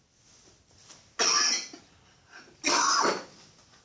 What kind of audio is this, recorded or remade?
recorded